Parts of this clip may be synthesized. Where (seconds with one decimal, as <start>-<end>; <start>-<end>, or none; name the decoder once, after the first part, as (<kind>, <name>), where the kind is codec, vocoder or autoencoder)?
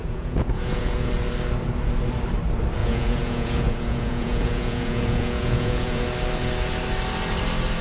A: 0.0-1.1 (vocoder, Vocos); 2.8-6.0